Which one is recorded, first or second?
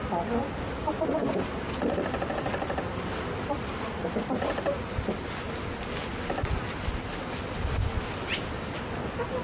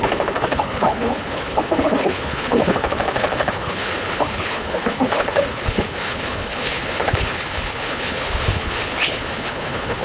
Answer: first